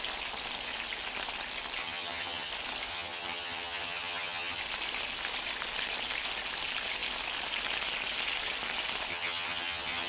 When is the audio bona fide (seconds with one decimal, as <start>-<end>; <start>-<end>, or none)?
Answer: 0.0-1.8; 2.5-2.9; 4.6-9.1

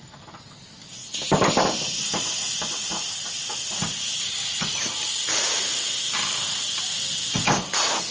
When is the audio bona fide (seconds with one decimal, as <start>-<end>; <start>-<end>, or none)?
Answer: 0.0-8.1

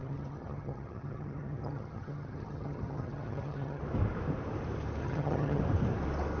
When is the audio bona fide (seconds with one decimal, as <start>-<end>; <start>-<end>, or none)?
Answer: 3.8-5.0; 5.6-6.4

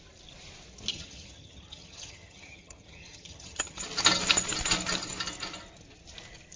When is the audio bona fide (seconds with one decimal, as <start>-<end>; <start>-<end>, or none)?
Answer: 0.0-0.9; 3.8-6.6

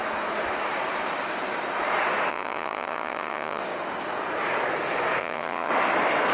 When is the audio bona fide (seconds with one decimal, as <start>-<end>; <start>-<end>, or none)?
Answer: 0.0-2.3; 3.6-5.2; 5.7-6.3

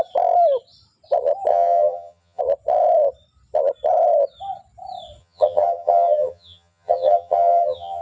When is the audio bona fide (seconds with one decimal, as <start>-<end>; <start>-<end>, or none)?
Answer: 0.0-1.5; 2.4-5.2